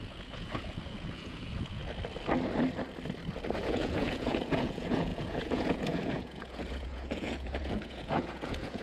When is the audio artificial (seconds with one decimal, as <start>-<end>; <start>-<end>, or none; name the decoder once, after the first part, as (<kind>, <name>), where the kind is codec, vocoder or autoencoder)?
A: 0.0-1.8 (vocoder, Vocos); 3.6-8.8